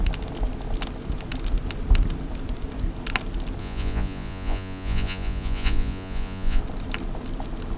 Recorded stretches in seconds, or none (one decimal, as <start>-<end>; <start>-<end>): 0.0-3.6; 6.6-7.8

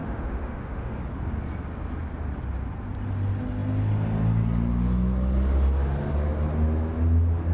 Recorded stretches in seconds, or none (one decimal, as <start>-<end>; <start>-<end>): 1.0-7.5

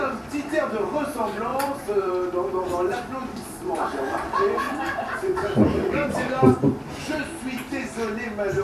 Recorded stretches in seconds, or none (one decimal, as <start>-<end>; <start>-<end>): 0.0-1.5; 2.1-3.2; 6.3-8.6

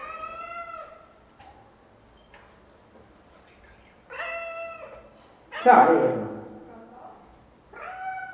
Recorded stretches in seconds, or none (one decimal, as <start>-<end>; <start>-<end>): 0.0-8.3

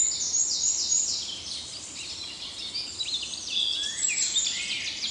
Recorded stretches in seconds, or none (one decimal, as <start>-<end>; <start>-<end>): 0.0-5.1

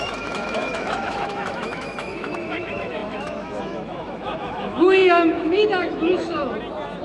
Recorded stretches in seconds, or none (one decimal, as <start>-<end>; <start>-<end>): 6.4-7.0

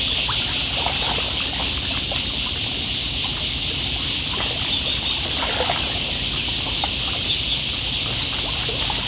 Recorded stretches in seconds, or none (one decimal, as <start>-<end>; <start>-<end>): 0.0-9.1

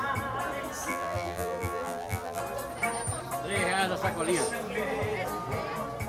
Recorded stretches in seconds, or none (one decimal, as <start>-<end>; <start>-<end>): 0.0-0.9; 2.4-6.1